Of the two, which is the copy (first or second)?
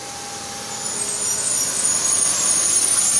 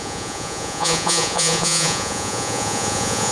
second